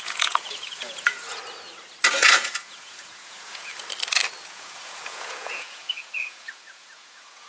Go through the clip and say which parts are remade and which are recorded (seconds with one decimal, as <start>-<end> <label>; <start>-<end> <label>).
0.0-1.4 remade; 1.4-2.1 recorded; 2.1-3.7 remade; 3.7-4.5 recorded; 4.5-7.5 remade